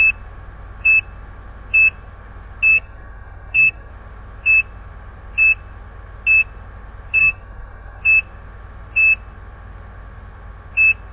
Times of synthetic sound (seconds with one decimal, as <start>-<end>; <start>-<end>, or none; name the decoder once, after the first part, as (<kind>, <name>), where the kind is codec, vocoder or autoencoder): 2.7-3.9 (codec, SNAC); 7.2-8.0